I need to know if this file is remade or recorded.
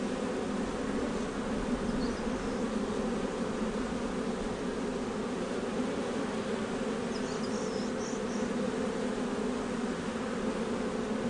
recorded